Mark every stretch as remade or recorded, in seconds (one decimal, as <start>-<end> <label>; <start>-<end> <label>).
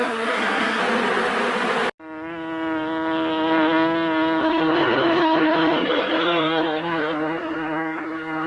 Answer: 0.0-0.8 remade; 0.8-4.4 recorded; 4.4-8.5 remade